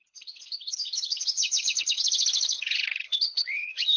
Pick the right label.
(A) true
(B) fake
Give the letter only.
B